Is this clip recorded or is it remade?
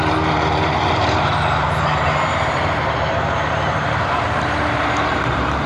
remade